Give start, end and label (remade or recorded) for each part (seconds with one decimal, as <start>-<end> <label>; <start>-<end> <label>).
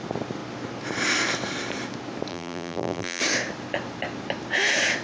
0.0-2.3 recorded; 2.3-3.2 remade; 3.2-5.0 recorded